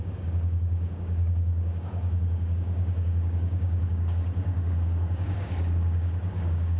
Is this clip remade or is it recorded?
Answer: remade